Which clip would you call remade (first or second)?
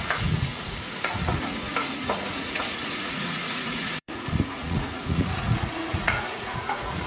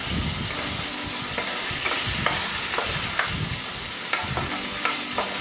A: first